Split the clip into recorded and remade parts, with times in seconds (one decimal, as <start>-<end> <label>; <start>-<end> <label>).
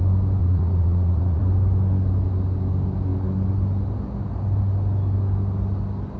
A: 0.0-0.4 recorded; 0.4-1.4 remade; 1.4-6.2 recorded